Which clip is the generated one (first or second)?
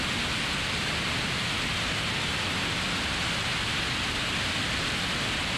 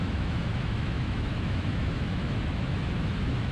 second